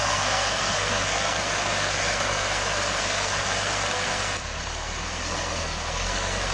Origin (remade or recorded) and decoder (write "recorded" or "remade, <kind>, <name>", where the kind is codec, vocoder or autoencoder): remade, codec, SNAC